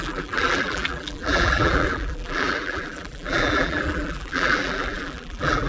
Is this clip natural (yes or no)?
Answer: no